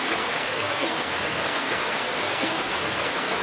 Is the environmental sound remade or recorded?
remade